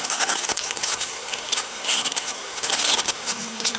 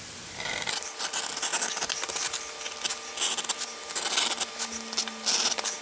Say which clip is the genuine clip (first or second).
second